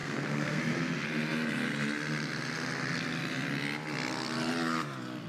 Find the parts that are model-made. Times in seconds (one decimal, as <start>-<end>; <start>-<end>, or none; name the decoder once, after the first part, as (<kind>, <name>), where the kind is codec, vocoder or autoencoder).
0.0-0.6 (codec, SNAC)